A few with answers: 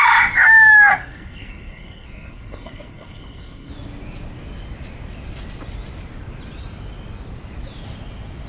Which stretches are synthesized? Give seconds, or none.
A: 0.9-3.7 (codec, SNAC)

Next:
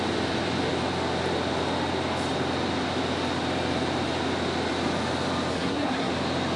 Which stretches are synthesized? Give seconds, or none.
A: 5.5-6.1 (codec, SNAC)